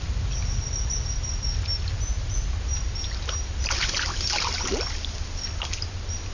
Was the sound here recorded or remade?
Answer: recorded